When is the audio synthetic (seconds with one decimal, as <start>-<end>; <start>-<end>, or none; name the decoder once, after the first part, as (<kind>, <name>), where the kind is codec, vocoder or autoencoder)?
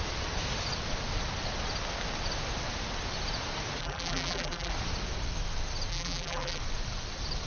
3.8-4.7 (vocoder, BigVGAN v2); 5.9-6.6